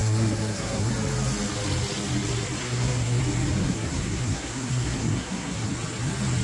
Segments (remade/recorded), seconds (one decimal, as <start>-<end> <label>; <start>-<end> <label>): 0.0-0.9 remade; 0.9-2.6 recorded; 2.6-3.2 remade; 3.2-3.6 recorded; 3.6-5.7 remade; 5.7-6.4 recorded